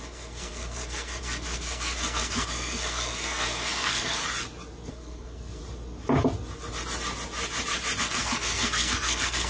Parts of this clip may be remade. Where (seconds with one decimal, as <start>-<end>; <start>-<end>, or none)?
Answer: 0.0-4.2; 4.9-5.6; 8.0-9.5